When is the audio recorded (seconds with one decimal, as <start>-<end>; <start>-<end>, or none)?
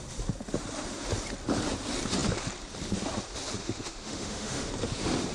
0.0-3.6; 4.7-5.3